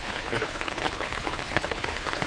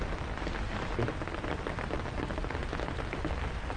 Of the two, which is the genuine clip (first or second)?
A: second